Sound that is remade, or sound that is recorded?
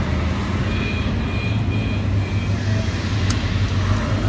recorded